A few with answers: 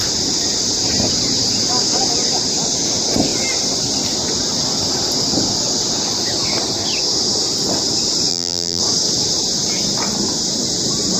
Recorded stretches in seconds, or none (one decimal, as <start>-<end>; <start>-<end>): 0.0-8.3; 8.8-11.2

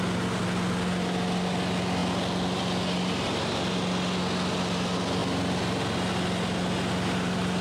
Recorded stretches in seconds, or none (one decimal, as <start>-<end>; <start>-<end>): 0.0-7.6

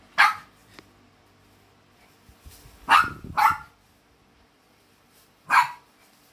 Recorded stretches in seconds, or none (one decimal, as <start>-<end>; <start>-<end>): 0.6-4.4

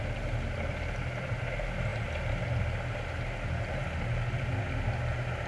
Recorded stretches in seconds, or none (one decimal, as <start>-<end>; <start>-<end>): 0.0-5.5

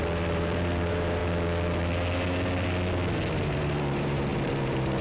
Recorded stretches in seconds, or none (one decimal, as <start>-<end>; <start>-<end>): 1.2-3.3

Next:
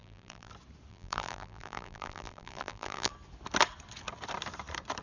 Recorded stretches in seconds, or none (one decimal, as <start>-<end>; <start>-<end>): 0.5-0.9; 3.1-5.0